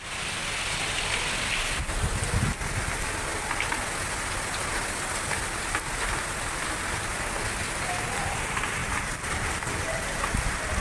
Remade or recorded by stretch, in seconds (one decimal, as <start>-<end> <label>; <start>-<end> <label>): 0.0-8.8 recorded; 8.8-10.8 remade